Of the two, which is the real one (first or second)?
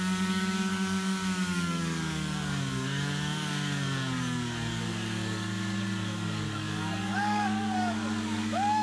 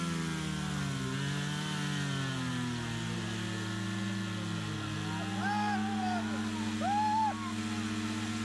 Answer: second